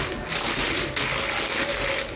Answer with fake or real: real